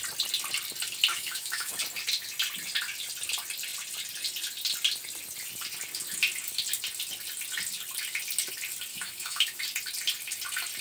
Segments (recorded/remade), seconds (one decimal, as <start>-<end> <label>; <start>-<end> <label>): 0.0-1.1 recorded; 1.1-1.7 remade; 1.7-8.9 recorded; 8.9-9.6 remade; 9.6-10.8 recorded